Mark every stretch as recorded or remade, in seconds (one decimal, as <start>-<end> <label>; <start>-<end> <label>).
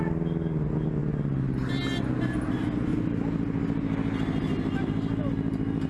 0.0-5.9 recorded